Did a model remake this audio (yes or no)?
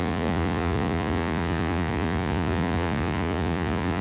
yes